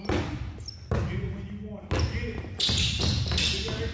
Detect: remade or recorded recorded